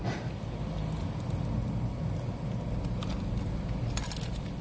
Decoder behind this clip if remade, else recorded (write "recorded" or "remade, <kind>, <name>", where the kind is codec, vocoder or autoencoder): recorded